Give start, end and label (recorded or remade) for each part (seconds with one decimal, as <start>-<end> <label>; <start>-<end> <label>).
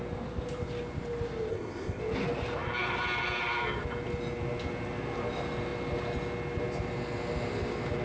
0.0-1.5 recorded; 1.5-2.0 remade; 2.0-8.0 recorded